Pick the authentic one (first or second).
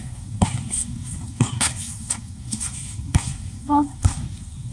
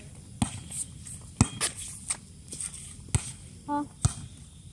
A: second